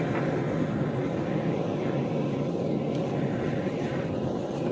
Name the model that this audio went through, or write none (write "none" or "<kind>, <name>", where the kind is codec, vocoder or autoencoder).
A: none